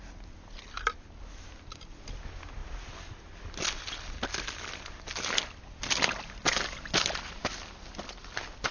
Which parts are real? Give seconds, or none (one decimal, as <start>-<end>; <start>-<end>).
0.0-8.7